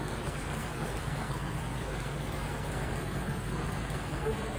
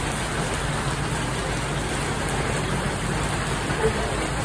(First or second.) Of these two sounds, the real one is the second